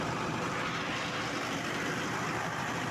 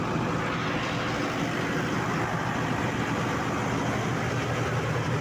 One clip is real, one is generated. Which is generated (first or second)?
first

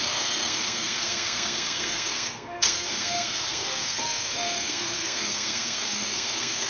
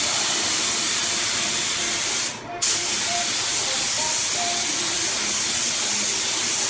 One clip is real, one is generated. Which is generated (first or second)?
first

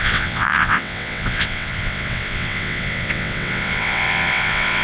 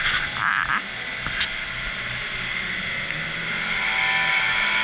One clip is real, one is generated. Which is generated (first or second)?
first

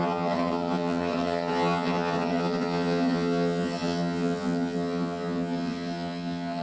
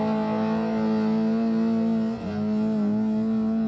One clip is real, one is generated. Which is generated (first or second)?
first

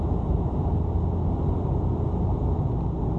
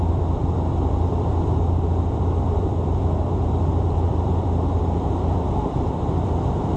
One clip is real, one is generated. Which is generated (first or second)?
second